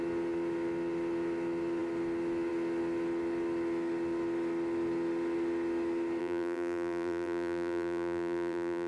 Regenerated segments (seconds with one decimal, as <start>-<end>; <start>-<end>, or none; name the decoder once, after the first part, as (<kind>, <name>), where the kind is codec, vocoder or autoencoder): 6.2-8.9 (vocoder, BigVGAN v2)